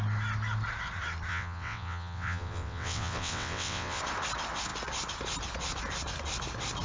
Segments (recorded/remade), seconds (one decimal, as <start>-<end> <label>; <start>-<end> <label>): 0.0-1.3 recorded; 1.3-4.0 remade; 4.0-6.8 recorded